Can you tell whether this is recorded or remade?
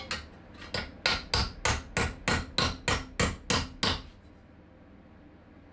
recorded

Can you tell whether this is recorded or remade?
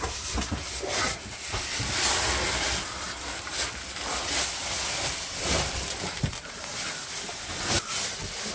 recorded